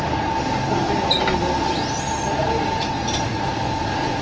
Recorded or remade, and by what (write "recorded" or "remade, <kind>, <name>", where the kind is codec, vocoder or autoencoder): recorded